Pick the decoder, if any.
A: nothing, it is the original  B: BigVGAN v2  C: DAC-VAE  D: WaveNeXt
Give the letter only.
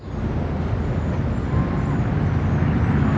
A